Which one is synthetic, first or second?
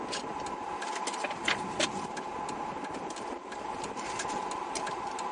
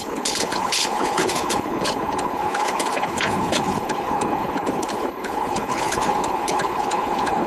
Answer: second